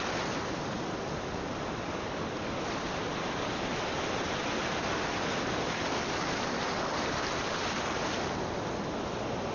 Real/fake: real